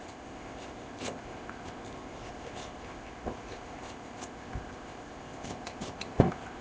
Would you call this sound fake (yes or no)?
yes